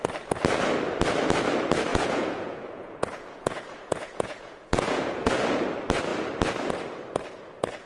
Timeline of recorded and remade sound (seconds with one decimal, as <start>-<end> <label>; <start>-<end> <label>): 0.0-1.9 recorded; 1.9-5.3 remade; 5.3-7.9 recorded